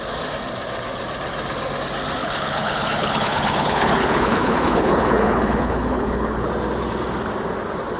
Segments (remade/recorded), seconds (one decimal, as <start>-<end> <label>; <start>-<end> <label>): 0.0-2.2 recorded; 2.2-6.5 remade; 6.5-8.0 recorded